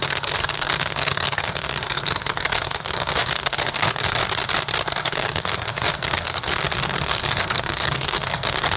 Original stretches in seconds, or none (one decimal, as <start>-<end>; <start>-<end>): 4.2-5.0